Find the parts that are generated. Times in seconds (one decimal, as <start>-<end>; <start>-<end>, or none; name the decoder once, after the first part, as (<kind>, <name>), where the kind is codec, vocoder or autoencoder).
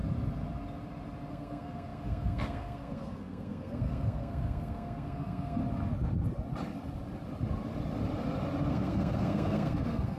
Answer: 1.3-5.6 (codec, SNAC); 8.7-10.2